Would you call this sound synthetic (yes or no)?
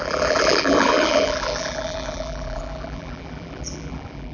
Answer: yes